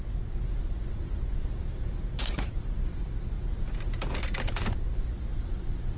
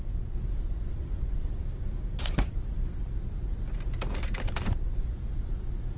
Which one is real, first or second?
first